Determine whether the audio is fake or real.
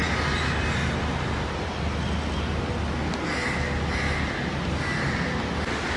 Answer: real